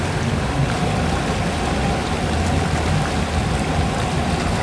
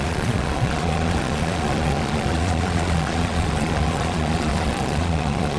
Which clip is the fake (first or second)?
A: second